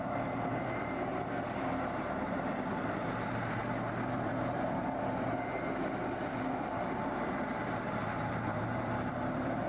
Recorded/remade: remade